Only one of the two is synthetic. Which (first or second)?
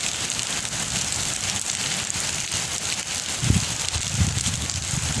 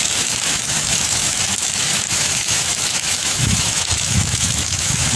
second